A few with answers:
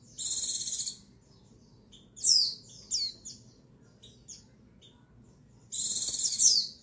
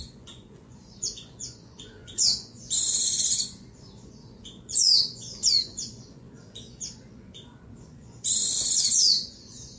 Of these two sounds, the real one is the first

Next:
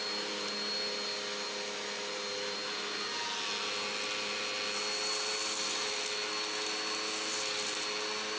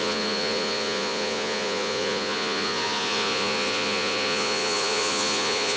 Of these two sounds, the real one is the first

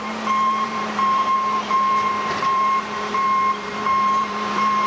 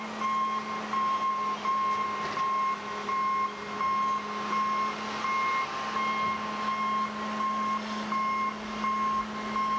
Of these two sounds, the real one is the second